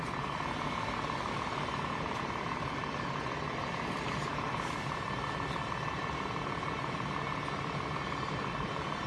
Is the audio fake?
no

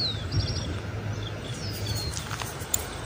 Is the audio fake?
no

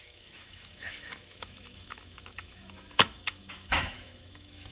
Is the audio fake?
yes